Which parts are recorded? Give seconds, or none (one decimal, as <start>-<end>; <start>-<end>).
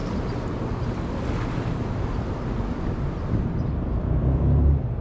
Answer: 0.0-5.0